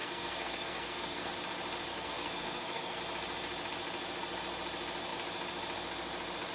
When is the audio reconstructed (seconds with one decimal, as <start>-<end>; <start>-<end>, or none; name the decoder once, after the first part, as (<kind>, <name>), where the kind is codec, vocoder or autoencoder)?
0.0-1.3 (codec, SNAC); 1.9-3.0